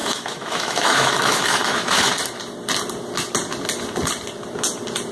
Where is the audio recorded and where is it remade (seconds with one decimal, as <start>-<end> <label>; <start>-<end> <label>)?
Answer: 0.0-2.1 remade; 2.1-5.1 recorded